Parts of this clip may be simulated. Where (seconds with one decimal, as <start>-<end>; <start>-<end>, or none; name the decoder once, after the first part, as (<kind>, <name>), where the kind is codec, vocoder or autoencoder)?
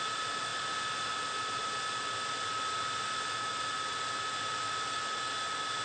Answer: none